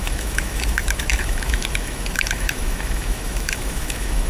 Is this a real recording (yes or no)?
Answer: no